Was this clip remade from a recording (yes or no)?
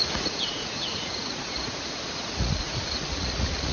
yes